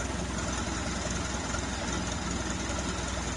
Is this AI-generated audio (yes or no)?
no